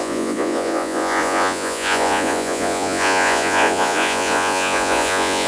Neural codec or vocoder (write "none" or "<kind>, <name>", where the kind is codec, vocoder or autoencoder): vocoder, Vocos